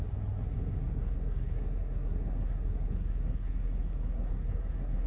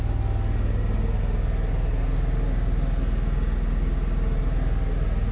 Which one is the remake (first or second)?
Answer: first